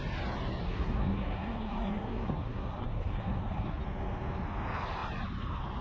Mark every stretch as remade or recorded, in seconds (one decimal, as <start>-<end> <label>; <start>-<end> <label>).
0.0-0.6 recorded; 0.6-3.8 remade; 3.8-5.8 recorded